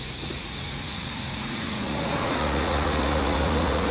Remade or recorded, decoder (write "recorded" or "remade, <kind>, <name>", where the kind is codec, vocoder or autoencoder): remade, vocoder, Vocos